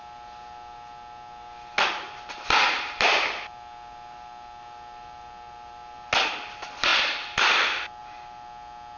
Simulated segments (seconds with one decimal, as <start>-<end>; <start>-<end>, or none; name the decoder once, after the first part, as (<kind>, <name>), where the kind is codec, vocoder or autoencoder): none